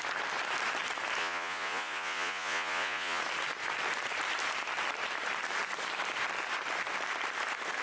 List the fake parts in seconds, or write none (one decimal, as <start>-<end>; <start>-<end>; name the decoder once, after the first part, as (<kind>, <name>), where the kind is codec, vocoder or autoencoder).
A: 1.2-3.2 (vocoder, Vocos)